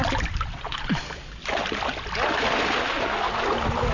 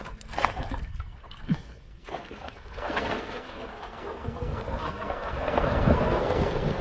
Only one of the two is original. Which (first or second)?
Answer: first